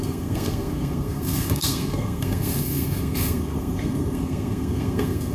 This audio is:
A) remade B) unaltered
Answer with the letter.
A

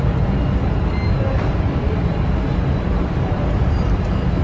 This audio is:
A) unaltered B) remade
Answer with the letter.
A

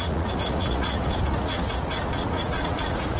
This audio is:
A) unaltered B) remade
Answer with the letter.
B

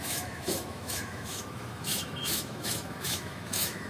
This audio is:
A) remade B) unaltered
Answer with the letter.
A